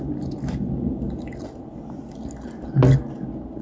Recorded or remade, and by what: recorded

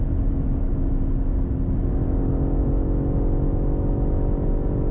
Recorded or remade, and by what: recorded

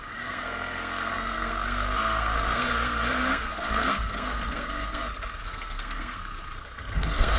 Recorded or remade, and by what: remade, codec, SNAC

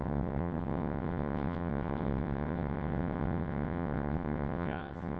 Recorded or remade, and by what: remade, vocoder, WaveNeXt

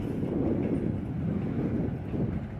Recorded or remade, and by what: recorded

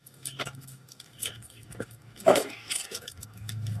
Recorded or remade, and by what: remade, codec, DAC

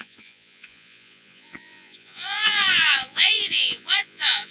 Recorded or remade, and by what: remade, vocoder, Vocos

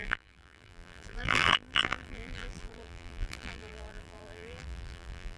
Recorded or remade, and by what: remade, vocoder, BigVGAN v2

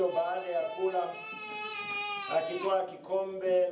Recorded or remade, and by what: recorded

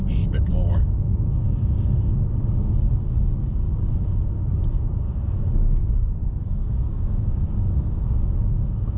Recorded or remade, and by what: remade, codec, DAC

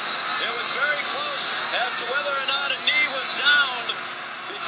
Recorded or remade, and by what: recorded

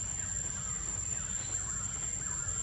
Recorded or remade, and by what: recorded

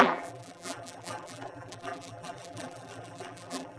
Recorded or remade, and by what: remade, vocoder, BigVGAN v2